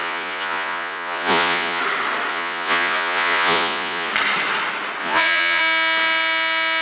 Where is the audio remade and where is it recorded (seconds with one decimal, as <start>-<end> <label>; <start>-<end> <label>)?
0.0-1.8 remade; 1.8-2.3 recorded; 2.3-4.1 remade; 4.1-5.0 recorded; 5.0-5.6 remade; 5.6-6.8 recorded